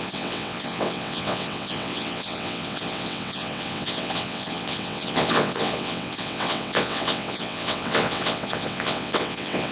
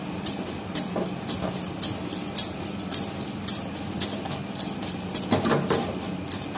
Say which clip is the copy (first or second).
first